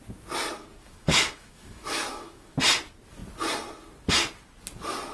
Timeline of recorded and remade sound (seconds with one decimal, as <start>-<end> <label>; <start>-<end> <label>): 0.0-0.8 recorded; 0.8-2.6 remade; 2.6-5.1 recorded